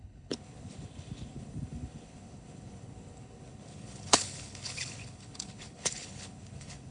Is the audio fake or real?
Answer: fake